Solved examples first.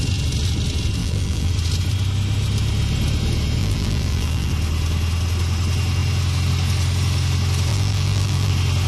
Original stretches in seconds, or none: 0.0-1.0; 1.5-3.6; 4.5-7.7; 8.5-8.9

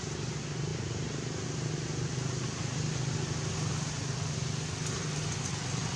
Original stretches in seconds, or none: 0.0-6.0

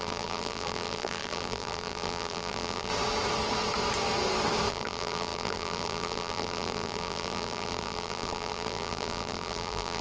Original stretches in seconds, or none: 2.9-4.7

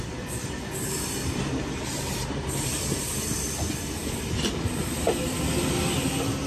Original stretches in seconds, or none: 0.0-1.2; 2.7-4.0; 5.1-6.5